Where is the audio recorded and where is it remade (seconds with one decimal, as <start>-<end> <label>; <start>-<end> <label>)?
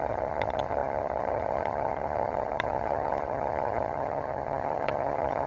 0.0-5.5 remade